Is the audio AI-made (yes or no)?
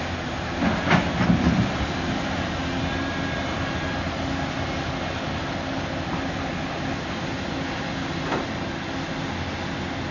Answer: no